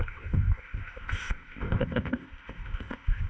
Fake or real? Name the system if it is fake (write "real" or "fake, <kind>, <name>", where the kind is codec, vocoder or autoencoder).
fake, codec, ZipCodec